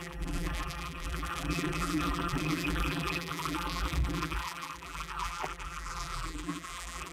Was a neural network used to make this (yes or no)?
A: yes